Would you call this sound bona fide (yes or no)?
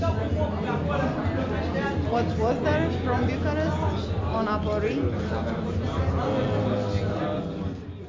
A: yes